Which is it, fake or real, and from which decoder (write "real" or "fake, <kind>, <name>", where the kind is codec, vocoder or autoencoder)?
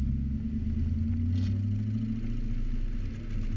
real